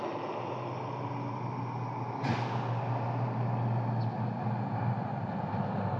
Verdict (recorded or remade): recorded